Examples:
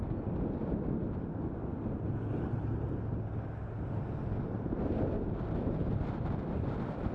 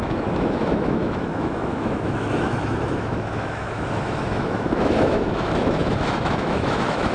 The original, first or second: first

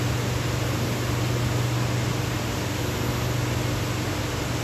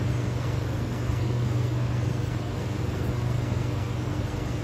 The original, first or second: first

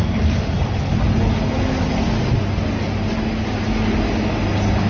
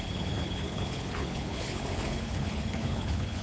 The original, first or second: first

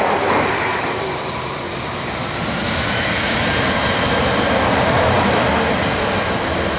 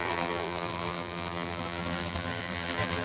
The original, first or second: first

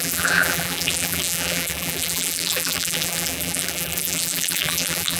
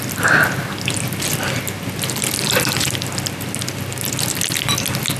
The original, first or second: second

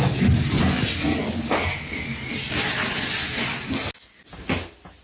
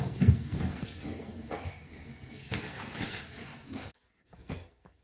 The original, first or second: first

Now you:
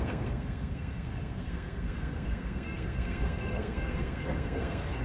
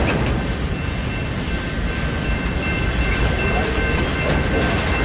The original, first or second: second